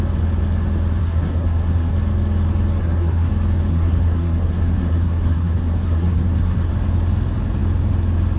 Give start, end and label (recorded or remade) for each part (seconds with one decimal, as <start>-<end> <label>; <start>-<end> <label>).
0.0-1.0 recorded; 1.0-1.9 remade; 1.9-2.8 recorded; 2.8-3.3 remade; 3.3-3.7 recorded; 3.7-6.7 remade; 6.7-8.4 recorded